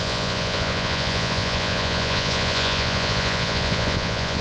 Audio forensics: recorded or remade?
remade